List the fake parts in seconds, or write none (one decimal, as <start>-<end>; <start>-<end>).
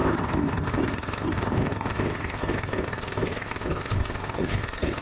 0.0-5.0